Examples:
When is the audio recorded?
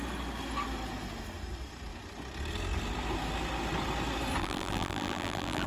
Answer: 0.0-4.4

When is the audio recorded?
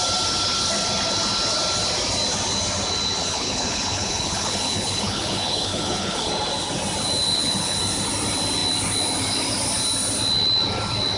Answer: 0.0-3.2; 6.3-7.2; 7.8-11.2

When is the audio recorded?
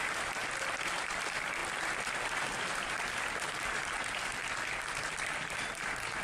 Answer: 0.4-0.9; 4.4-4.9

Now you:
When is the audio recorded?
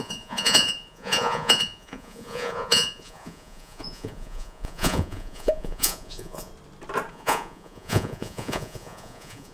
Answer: 6.5-7.1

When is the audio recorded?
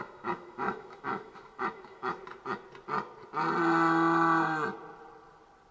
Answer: 2.2-5.7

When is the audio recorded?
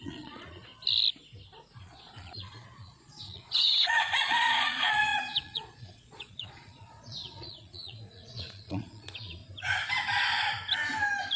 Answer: 0.7-1.8; 9.4-11.4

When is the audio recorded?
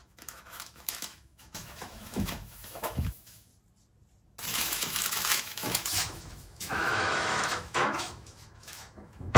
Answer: 3.5-4.5